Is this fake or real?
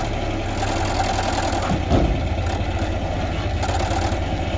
real